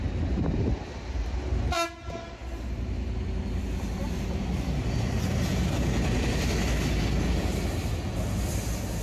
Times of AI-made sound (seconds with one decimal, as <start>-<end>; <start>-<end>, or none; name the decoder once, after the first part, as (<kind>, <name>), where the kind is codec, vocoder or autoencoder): none